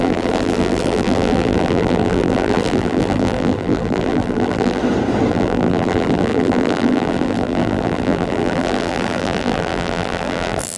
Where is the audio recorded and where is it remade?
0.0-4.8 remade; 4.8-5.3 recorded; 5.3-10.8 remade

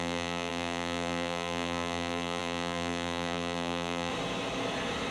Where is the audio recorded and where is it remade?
0.0-4.1 remade; 4.1-5.1 recorded

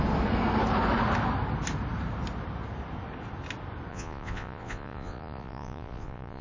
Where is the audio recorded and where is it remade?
0.0-3.9 recorded; 3.9-6.4 remade

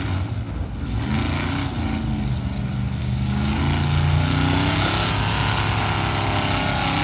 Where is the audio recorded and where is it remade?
0.0-3.0 recorded; 3.0-3.6 remade; 3.6-7.0 recorded

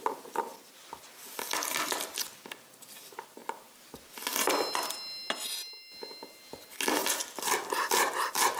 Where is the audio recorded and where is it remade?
0.0-7.0 recorded; 7.0-8.6 remade